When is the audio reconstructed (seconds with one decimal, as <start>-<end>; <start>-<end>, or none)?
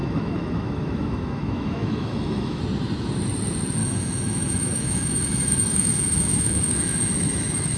0.0-2.6; 3.8-7.8